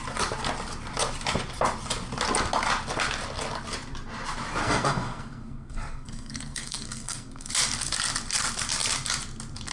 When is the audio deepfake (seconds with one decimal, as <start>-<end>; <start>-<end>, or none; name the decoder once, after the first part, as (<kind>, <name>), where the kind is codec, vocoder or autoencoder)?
4.6-7.5 (codec, SNAC)